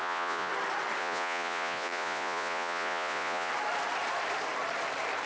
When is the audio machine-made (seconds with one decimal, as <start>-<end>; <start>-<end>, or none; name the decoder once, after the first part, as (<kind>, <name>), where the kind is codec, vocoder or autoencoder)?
0.0-0.5 (vocoder, Vocos); 1.0-3.5